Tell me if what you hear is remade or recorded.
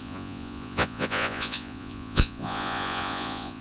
remade